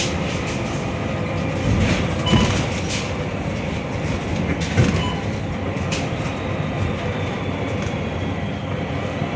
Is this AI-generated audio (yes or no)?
no